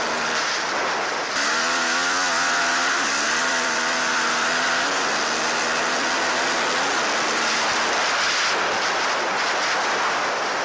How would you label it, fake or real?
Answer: fake